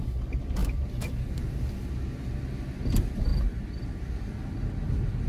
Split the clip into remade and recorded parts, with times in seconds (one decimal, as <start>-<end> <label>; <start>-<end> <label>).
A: 0.0-0.6 recorded; 0.6-1.9 remade; 1.9-5.3 recorded